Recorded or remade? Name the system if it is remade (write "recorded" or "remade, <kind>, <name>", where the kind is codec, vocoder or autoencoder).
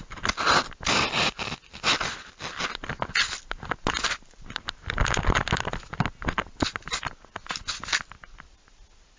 recorded